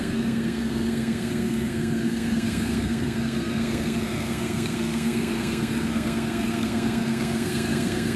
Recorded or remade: remade